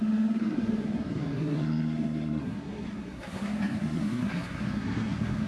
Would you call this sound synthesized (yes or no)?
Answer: yes